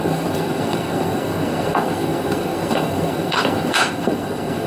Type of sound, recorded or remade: remade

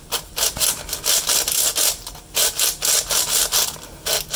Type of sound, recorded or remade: recorded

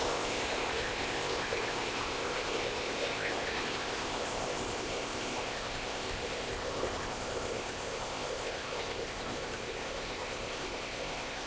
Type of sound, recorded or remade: remade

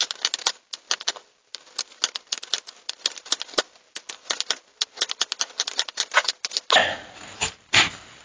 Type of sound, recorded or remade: recorded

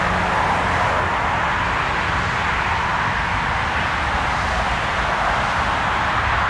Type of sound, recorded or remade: recorded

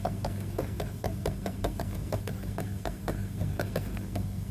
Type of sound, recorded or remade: remade